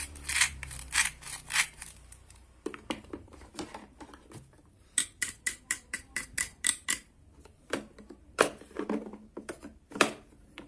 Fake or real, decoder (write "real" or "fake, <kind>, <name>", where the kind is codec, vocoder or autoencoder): fake, vocoder, BigVGAN v2